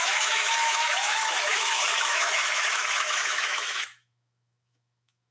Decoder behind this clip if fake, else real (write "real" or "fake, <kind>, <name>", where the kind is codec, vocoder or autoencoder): fake, autoencoder, DAC-VAE